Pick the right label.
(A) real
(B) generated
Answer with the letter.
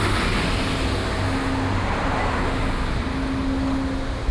A